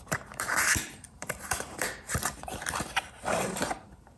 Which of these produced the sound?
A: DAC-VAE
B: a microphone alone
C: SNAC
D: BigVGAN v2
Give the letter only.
D